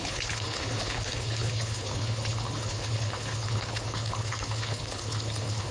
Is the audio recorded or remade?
remade